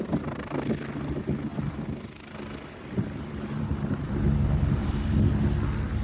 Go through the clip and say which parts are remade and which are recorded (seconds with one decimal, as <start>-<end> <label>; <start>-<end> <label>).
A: 0.0-1.5 recorded; 1.5-5.1 remade; 5.1-6.0 recorded

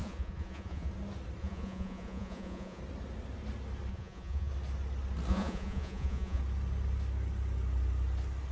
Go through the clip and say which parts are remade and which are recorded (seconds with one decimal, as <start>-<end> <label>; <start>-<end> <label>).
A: 0.0-0.9 remade; 0.9-1.4 recorded; 1.4-2.8 remade; 2.8-3.9 recorded; 3.9-4.5 remade; 4.5-5.3 recorded; 5.3-6.4 remade; 6.4-8.5 recorded

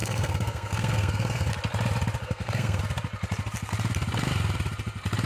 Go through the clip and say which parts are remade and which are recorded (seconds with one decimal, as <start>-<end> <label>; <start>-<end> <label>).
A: 0.0-1.5 remade; 1.5-2.2 recorded; 2.2-2.8 remade; 2.8-5.3 recorded

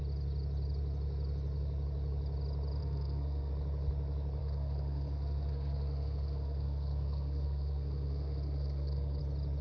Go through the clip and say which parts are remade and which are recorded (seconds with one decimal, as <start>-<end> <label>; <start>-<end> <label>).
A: 0.0-2.8 recorded; 2.8-3.5 remade; 3.5-4.4 recorded; 4.4-9.2 remade; 9.2-9.6 recorded

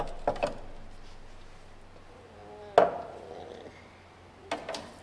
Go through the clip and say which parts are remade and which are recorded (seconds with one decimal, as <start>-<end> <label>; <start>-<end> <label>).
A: 0.0-5.0 recorded

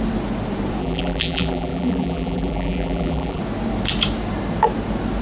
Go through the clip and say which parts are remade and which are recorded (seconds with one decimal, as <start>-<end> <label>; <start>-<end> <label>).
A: 0.0-0.8 recorded; 0.8-3.4 remade; 3.4-5.2 recorded

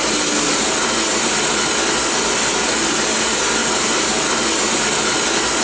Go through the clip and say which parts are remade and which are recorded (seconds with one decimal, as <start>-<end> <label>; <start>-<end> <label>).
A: 0.0-5.6 recorded